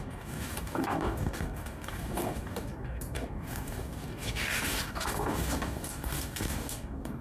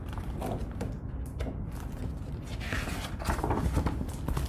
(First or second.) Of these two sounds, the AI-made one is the first